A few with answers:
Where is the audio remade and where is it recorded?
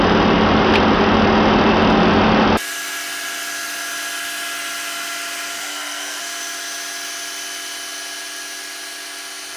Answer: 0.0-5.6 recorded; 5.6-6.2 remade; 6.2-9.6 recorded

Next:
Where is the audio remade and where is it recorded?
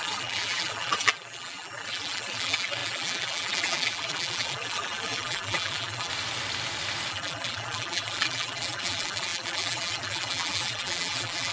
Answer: 0.0-6.1 remade; 6.1-7.1 recorded; 7.1-11.5 remade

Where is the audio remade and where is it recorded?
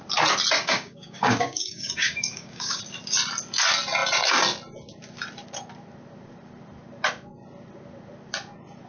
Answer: 0.0-0.6 recorded; 0.6-2.8 remade; 2.8-8.9 recorded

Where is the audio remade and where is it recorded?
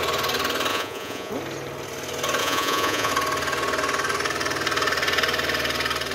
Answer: 0.0-0.7 recorded; 0.7-1.3 remade; 1.3-2.4 recorded; 2.4-3.1 remade; 3.1-6.1 recorded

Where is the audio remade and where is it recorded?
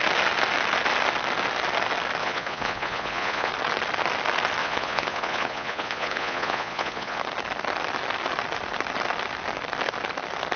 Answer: 0.0-2.2 recorded; 2.2-3.5 remade; 3.5-4.6 recorded; 4.6-7.2 remade; 7.2-10.6 recorded